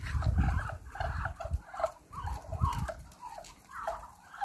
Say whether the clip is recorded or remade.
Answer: recorded